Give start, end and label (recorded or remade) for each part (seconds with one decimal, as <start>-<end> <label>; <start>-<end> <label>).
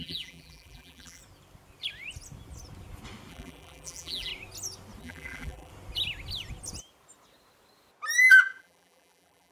0.0-1.2 remade; 1.2-3.3 recorded; 3.3-4.3 remade; 4.3-5.0 recorded; 5.0-5.7 remade; 5.7-8.3 recorded; 8.3-9.5 remade